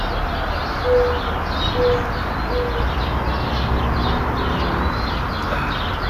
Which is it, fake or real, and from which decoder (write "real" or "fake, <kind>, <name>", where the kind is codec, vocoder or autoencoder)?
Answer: real